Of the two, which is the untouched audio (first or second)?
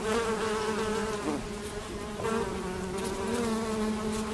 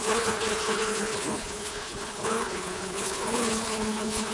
first